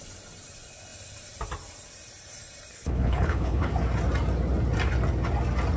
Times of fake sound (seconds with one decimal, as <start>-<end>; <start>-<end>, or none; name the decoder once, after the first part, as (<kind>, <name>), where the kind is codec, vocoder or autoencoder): 2.7-3.7 (codec, HILCodec)